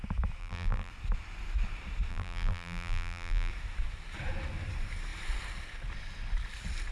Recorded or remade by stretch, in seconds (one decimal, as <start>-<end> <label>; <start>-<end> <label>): 0.0-0.4 recorded; 0.4-0.9 remade; 0.9-2.1 recorded; 2.1-3.5 remade; 3.5-6.9 recorded